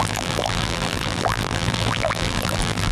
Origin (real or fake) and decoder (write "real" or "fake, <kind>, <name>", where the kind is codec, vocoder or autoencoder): fake, vocoder, BigVGAN v2